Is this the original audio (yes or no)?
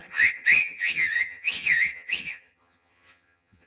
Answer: no